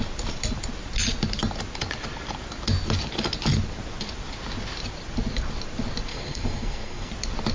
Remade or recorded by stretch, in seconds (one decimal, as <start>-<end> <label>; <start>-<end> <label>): 0.0-6.1 recorded; 6.1-7.1 remade; 7.1-7.5 recorded